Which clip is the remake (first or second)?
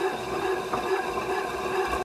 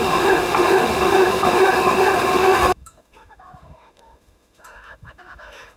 second